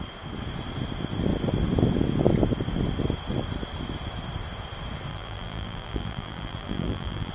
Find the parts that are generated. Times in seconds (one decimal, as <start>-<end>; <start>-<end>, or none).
5.1-7.3